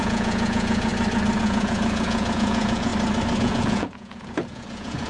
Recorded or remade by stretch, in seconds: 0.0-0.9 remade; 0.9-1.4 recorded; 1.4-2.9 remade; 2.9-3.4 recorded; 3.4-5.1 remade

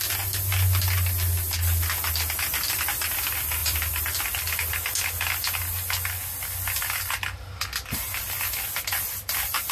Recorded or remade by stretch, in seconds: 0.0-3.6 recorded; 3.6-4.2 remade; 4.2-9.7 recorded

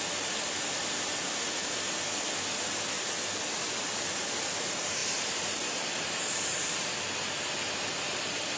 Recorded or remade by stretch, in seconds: 0.0-5.0 recorded; 5.0-6.9 remade; 6.9-8.6 recorded